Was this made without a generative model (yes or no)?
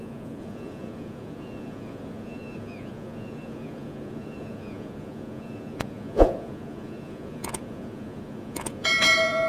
no